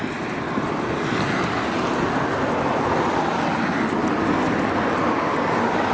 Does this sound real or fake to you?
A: real